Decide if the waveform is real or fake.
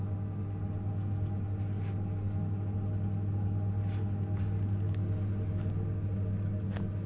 real